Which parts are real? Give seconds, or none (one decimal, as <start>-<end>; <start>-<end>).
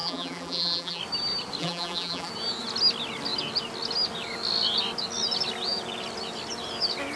1.0-1.6; 2.3-7.2